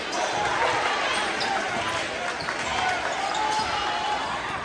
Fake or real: real